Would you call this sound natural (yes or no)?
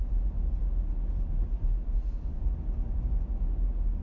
yes